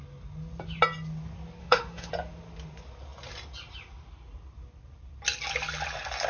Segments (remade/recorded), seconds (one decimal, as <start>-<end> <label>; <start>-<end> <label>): 0.0-1.6 recorded; 1.6-2.1 remade; 2.1-6.3 recorded